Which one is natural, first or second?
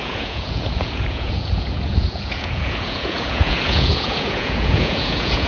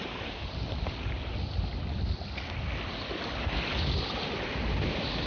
second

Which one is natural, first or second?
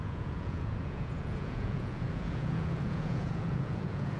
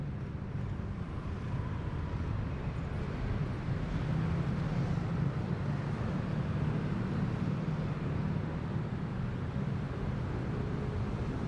second